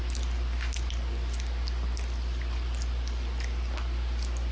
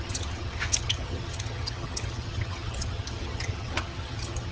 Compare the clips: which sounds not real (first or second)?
second